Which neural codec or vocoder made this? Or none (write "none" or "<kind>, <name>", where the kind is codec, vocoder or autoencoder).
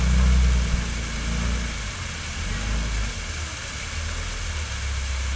none